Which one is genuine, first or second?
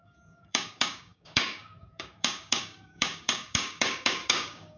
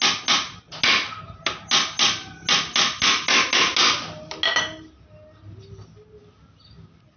second